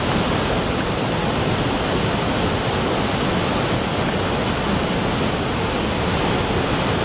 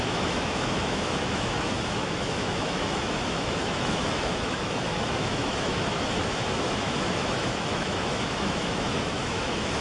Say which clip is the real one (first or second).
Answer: first